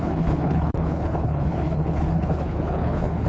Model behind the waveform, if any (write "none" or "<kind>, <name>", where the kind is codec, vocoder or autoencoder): codec, HILCodec